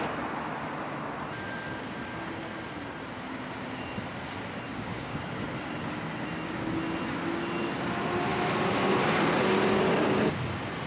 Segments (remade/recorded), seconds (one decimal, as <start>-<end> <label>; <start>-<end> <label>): 0.0-4.7 recorded; 4.7-5.2 remade; 5.2-10.9 recorded